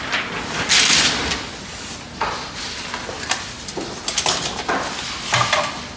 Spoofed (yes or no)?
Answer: no